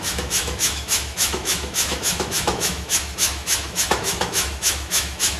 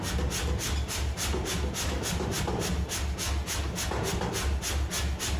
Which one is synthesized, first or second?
first